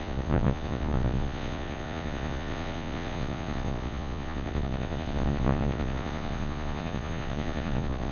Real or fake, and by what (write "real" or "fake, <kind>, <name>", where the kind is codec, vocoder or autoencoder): fake, vocoder, Vocos